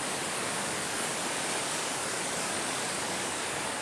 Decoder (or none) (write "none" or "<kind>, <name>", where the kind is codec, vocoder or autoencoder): codec, DAC